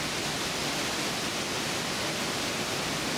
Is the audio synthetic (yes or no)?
no